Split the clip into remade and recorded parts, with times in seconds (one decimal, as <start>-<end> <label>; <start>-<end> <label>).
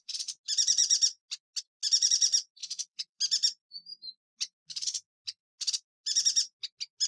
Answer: 0.0-2.6 recorded; 2.6-3.2 remade; 3.2-7.1 recorded